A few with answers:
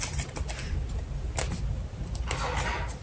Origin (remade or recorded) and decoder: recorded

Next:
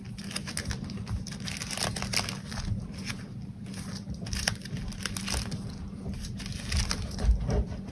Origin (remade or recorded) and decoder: recorded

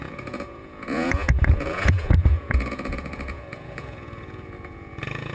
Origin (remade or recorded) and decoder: remade, vocoder, Vocos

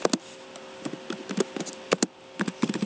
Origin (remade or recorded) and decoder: recorded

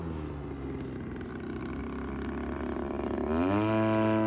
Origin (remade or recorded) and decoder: recorded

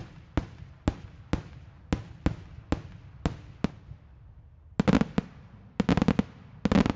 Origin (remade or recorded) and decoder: recorded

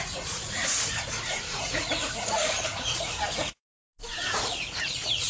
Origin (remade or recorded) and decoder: remade, vocoder, Vocos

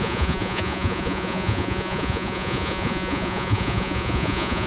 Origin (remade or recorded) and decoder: remade, vocoder, Vocos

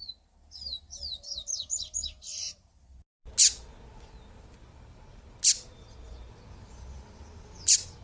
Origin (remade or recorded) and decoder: recorded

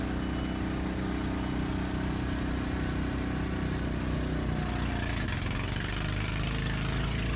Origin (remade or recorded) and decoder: recorded